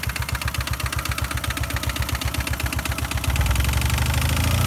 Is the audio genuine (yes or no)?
yes